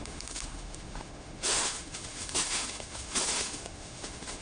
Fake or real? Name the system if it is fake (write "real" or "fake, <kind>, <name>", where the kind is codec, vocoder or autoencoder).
fake, autoencoder, DAC-VAE